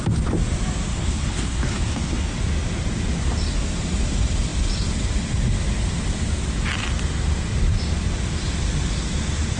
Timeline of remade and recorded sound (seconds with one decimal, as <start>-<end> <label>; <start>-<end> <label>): 0.0-0.9 recorded; 0.9-2.3 remade; 2.3-9.6 recorded